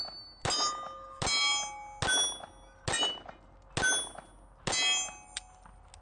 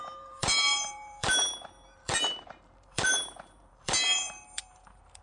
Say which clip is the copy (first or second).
second